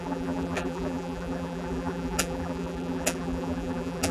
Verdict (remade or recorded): remade